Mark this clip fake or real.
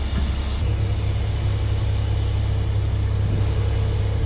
real